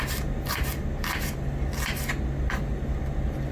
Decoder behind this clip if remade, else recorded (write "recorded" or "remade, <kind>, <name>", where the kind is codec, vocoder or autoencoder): recorded